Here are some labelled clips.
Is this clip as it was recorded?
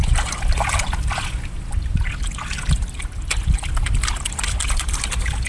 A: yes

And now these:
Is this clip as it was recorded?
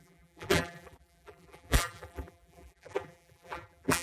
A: no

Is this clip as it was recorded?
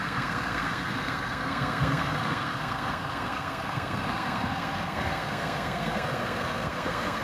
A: no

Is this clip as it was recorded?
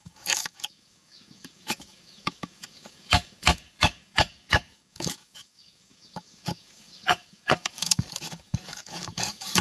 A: no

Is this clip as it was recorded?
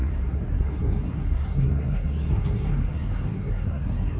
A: no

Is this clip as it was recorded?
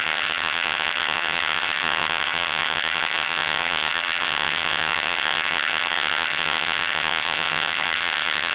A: no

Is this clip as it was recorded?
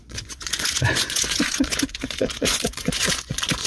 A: no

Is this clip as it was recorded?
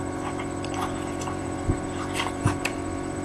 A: no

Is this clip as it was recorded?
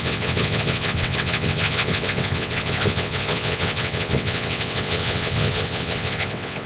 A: no